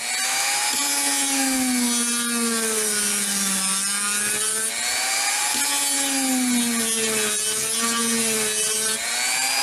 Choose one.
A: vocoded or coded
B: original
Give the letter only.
B